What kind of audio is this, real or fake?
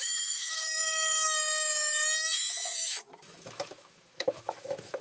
fake